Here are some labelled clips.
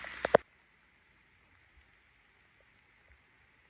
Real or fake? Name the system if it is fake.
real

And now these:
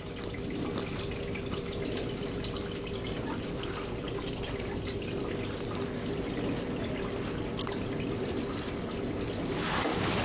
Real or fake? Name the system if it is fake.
real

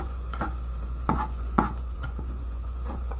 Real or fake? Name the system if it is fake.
fake, vocoder, Vocos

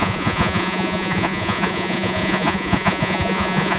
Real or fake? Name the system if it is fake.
fake, vocoder, Vocos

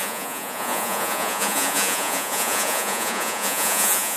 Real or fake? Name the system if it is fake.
fake, vocoder, Vocos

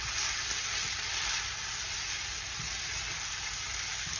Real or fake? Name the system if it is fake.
real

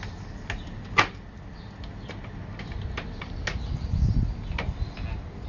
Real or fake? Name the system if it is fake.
real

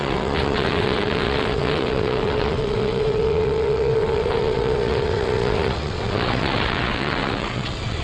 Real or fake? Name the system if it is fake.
fake, vocoder, WaveNeXt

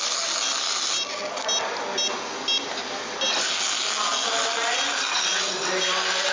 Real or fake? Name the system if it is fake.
real